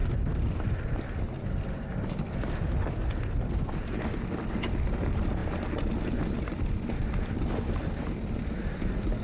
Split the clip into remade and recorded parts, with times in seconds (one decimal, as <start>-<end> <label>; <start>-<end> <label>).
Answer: 0.0-9.2 recorded